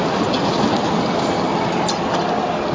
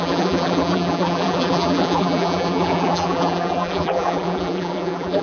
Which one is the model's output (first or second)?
second